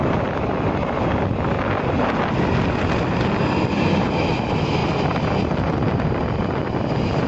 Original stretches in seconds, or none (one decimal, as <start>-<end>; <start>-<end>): 0.0-7.3